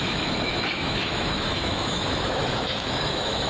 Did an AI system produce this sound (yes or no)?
yes